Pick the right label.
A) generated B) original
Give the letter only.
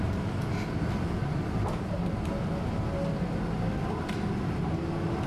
B